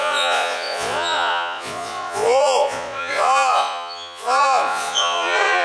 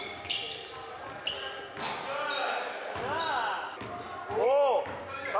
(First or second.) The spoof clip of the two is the first